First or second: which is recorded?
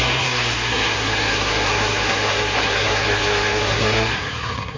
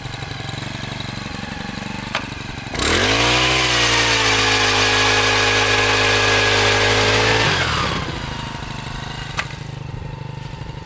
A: second